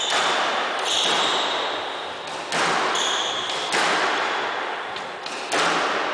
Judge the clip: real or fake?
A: real